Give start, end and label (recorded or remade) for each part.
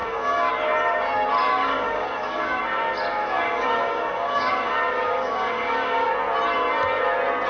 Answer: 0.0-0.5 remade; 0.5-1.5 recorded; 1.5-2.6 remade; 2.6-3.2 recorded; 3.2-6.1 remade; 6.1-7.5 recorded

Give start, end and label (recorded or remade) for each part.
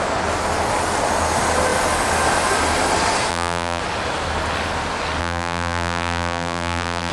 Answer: 0.0-3.3 recorded; 3.3-3.8 remade; 3.8-5.2 recorded; 5.2-7.1 remade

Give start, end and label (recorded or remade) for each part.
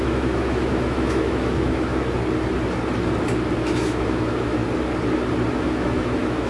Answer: 0.0-2.0 remade; 2.0-3.6 recorded; 3.6-4.6 remade; 4.6-5.5 recorded; 5.5-6.5 remade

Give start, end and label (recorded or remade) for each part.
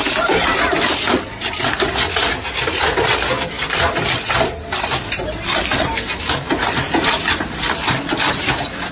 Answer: 0.0-8.9 recorded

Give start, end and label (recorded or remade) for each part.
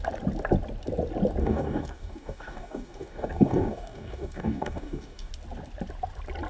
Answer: 0.0-1.4 recorded; 1.4-5.3 remade; 5.3-6.5 recorded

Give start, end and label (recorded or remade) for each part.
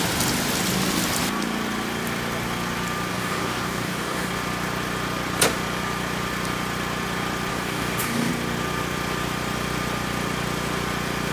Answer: 0.0-3.1 recorded; 3.1-4.3 remade; 4.3-7.5 recorded; 7.5-8.3 remade; 8.3-11.3 recorded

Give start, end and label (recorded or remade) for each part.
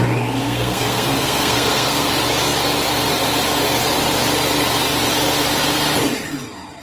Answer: 0.0-0.4 recorded; 0.4-2.1 remade; 2.1-6.8 recorded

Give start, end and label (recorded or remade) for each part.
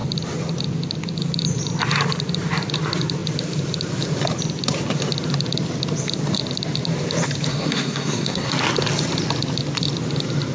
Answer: 0.0-7.5 recorded; 7.5-8.5 remade; 8.5-10.5 recorded